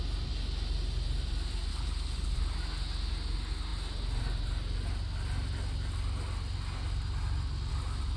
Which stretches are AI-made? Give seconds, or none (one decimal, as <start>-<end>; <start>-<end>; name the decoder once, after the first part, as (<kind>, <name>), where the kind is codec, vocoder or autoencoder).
1.7-2.3 (codec, HILCodec)